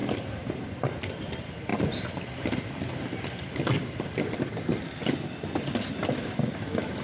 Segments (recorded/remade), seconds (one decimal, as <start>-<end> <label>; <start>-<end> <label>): 0.0-7.0 remade